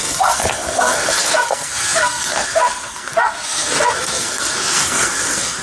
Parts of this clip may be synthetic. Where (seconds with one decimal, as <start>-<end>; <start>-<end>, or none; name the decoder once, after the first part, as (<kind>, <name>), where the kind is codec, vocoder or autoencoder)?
0.0-5.6 (codec, SNAC)